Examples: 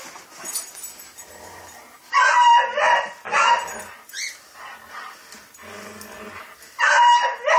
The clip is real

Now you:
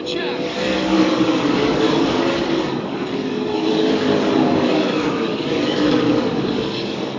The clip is fake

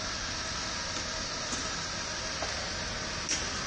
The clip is real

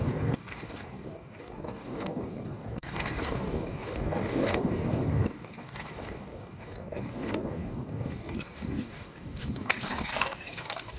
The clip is fake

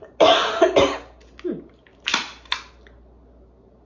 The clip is real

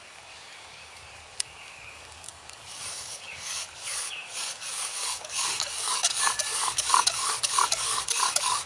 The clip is fake